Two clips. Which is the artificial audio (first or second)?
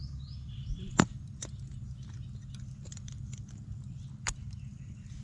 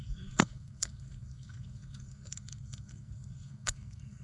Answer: second